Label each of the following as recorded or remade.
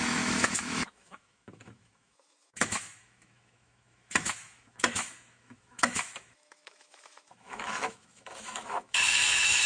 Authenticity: remade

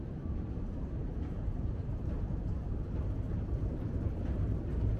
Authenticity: remade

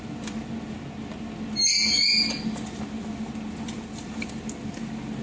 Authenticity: recorded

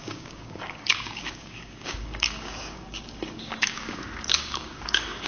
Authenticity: remade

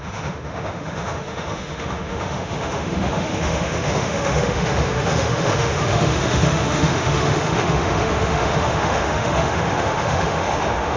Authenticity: remade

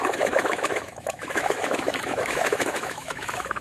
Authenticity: remade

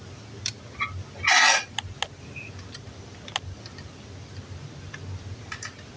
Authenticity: recorded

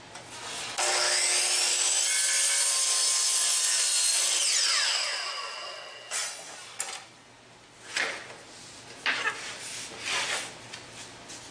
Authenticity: recorded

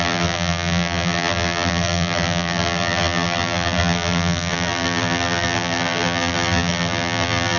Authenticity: remade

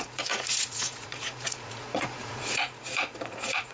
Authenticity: remade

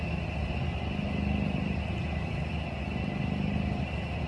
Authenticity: recorded